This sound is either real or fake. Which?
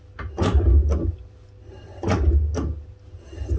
real